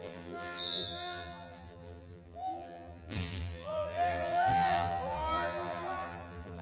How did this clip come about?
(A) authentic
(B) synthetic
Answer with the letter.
B